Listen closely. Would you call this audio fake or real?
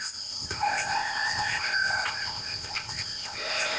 fake